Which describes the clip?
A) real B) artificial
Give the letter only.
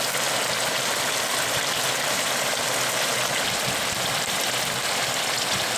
A